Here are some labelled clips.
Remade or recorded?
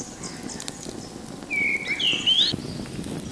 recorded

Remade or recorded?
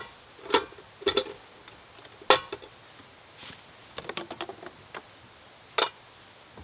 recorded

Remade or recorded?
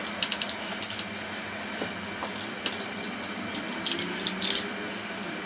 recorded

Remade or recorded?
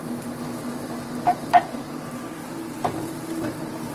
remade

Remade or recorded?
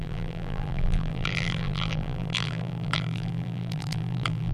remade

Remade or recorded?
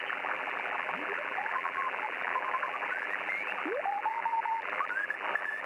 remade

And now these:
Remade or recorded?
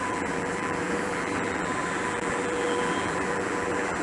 remade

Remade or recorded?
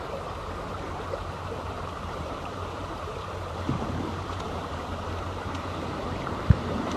remade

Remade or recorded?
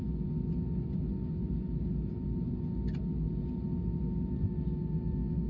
recorded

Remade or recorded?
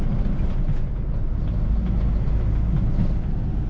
recorded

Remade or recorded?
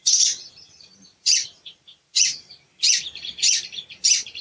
remade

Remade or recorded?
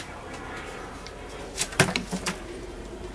remade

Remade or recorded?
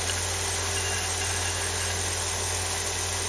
recorded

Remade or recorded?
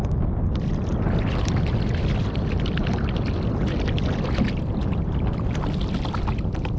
recorded